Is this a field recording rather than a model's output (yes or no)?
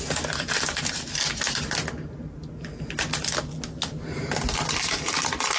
yes